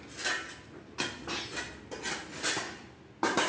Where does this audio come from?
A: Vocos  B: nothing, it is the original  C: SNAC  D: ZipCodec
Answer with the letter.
B